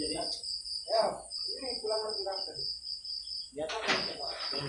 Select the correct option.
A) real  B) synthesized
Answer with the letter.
B